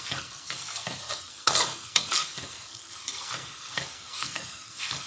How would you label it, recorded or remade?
remade